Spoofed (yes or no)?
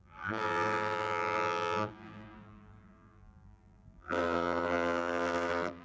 yes